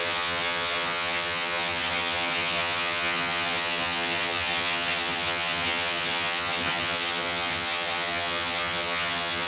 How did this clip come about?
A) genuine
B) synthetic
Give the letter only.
B